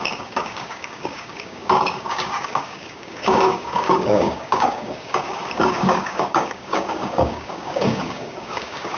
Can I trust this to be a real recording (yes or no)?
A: no